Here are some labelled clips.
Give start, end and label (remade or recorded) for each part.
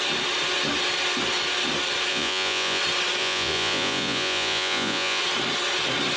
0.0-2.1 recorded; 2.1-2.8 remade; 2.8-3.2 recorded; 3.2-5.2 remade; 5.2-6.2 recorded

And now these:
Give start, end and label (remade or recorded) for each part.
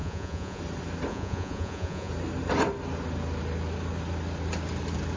0.0-0.6 remade; 0.6-1.1 recorded; 1.1-2.1 remade; 2.1-5.2 recorded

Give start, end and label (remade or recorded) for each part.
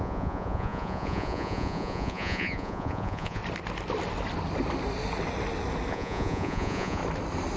0.0-3.4 remade; 3.4-5.9 recorded; 5.9-7.0 remade; 7.0-7.6 recorded